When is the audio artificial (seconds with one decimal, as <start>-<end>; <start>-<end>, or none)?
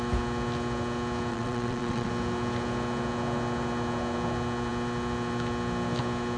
1.3-2.1